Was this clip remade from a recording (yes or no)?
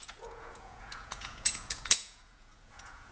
yes